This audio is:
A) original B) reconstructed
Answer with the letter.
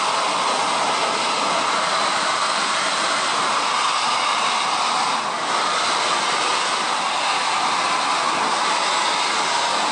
A